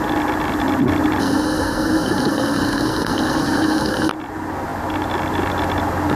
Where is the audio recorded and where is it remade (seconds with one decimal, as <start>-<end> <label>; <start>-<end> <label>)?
0.0-1.2 recorded; 1.2-4.1 remade; 4.1-6.2 recorded